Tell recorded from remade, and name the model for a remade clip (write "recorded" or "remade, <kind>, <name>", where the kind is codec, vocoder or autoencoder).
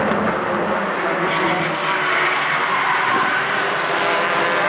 recorded